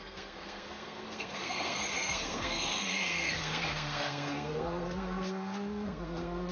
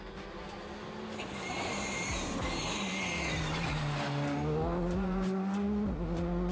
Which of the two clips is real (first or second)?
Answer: second